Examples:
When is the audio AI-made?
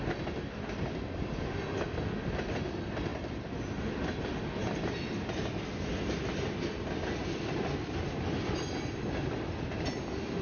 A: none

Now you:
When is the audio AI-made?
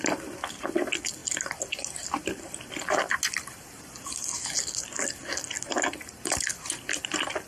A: none